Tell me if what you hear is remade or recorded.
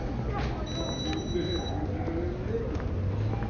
recorded